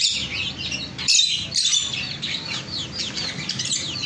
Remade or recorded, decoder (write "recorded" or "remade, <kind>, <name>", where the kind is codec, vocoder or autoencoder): recorded